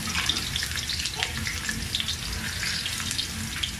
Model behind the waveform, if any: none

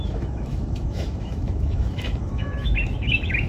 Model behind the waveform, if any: autoencoder, DAC-VAE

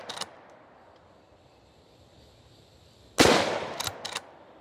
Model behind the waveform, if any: none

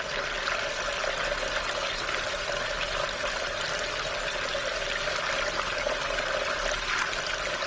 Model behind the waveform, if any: none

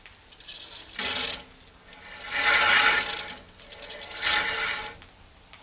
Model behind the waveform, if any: none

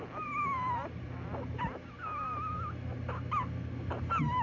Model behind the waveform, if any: none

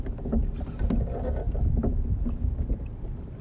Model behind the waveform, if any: none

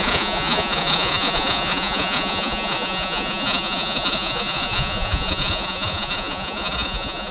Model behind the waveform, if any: vocoder, Vocos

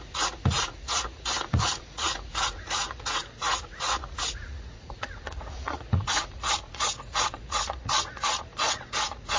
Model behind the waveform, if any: vocoder, Vocos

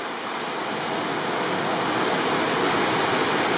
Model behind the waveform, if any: none